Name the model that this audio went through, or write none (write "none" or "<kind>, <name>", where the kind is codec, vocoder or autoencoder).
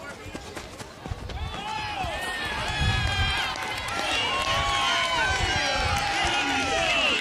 none